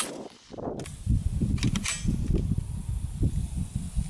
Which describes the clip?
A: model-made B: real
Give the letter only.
B